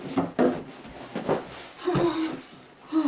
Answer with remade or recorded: recorded